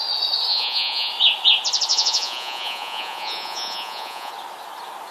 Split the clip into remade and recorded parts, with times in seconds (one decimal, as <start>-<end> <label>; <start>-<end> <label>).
0.0-0.5 recorded; 0.5-1.1 remade; 1.1-1.9 recorded; 1.9-4.3 remade; 4.3-5.1 recorded